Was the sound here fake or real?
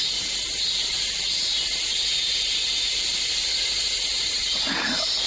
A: real